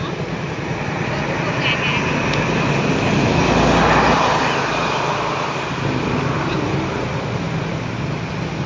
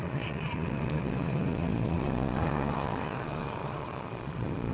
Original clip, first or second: first